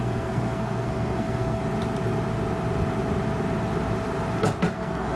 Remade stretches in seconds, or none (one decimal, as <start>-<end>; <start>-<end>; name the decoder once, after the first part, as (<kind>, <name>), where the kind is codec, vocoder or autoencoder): 0.0-1.6 (codec, SNAC); 4.7-5.2